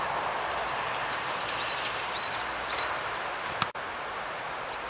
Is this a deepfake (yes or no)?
yes